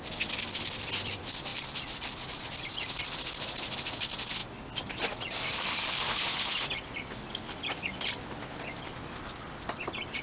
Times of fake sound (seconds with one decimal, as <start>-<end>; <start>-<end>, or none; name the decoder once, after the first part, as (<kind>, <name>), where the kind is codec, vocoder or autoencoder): 1.5-2.4 (vocoder, BigVGAN v2); 4.4-8.2